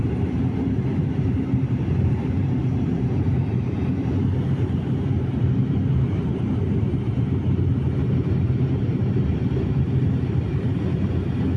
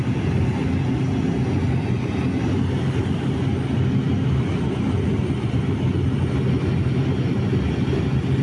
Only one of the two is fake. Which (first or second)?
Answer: first